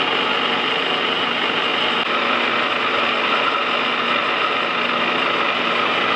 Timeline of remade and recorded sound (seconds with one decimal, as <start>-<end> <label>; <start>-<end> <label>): 0.0-6.2 recorded